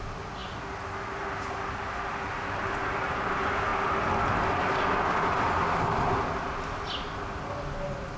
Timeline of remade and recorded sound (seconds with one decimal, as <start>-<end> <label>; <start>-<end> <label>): 0.0-8.2 recorded